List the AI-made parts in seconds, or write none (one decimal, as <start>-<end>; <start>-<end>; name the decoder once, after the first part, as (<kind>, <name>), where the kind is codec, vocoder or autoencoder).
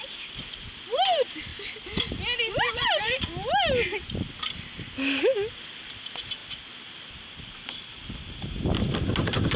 none